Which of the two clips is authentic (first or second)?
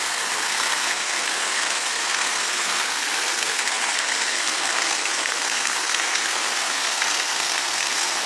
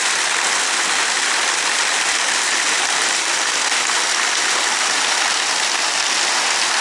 second